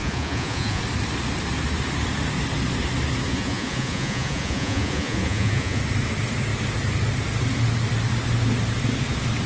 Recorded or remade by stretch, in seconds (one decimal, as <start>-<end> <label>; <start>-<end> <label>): 0.0-0.8 remade; 0.8-3.3 recorded; 3.3-5.8 remade; 5.8-9.5 recorded